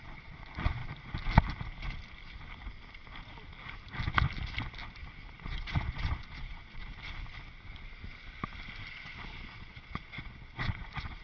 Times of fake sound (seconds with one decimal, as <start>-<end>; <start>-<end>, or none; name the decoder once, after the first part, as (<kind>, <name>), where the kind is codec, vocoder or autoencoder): 0.0-0.8 (vocoder, Vocos); 5.3-6.9; 8.9-11.2